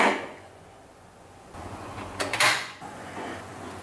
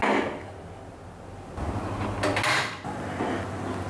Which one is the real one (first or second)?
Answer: second